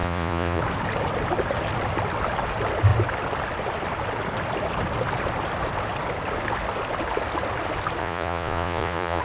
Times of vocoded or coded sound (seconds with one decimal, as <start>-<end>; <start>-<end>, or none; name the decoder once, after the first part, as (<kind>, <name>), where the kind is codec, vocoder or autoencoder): 0.0-0.6 (vocoder, Vocos); 8.0-9.2